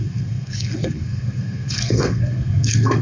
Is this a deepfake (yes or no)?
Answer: yes